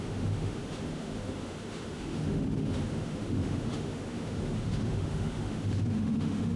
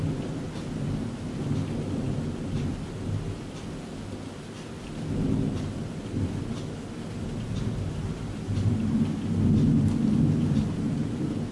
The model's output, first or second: first